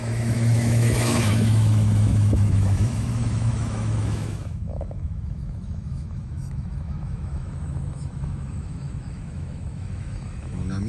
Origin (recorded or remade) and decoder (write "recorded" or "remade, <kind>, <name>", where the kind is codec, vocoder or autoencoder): remade, autoencoder, DAC-VAE